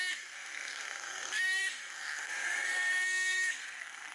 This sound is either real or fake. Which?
fake